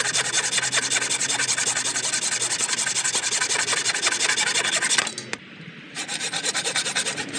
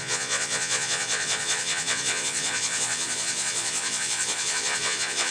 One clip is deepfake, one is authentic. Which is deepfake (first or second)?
second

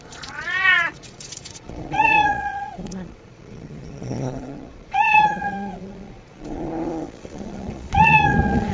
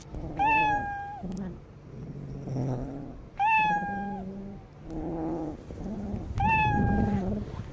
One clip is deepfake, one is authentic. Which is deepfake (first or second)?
first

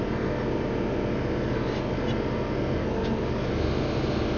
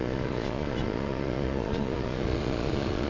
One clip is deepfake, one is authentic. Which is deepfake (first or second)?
second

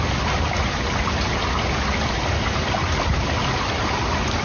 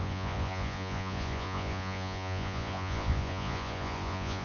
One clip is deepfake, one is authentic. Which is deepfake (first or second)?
second